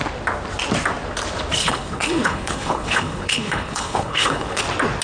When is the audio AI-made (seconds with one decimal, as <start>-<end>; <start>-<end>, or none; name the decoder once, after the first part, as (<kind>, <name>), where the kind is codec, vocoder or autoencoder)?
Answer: 1.6-4.6 (codec, HILCodec)